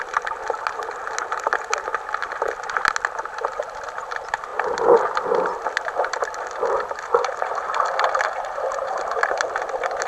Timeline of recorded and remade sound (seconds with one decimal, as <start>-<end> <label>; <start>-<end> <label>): 0.0-10.1 recorded